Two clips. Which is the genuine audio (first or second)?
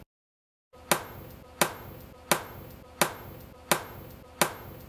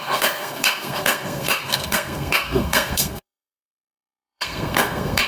first